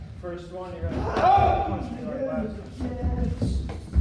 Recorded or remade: remade